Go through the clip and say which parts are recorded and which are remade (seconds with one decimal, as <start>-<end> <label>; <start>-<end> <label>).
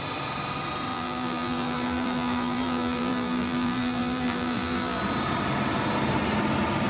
0.0-0.9 recorded; 0.9-5.0 remade; 5.0-6.9 recorded